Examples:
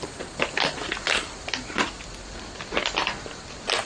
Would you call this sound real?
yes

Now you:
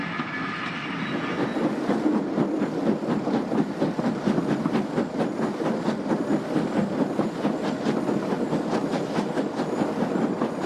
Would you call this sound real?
yes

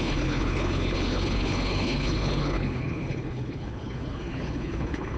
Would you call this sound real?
no